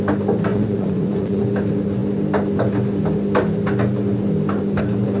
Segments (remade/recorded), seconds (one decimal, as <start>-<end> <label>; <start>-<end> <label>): 0.0-0.5 recorded; 0.5-1.4 remade; 1.4-5.2 recorded